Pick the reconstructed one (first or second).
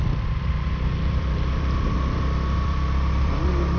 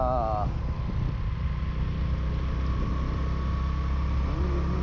first